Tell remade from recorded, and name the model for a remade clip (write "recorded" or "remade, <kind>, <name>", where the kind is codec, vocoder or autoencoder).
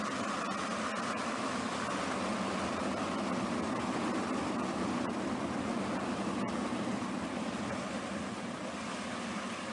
recorded